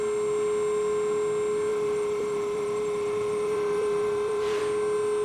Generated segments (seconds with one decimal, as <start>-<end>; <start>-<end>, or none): 1.7-4.6